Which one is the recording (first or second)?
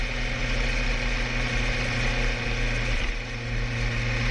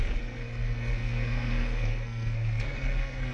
first